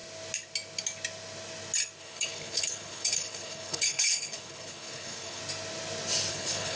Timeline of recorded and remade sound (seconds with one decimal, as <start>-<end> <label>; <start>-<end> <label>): 0.0-2.0 recorded; 2.0-5.4 remade; 5.4-6.3 recorded; 6.3-6.8 remade